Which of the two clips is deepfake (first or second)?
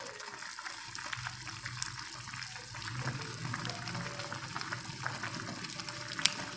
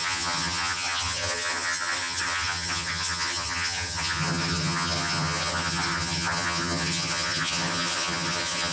second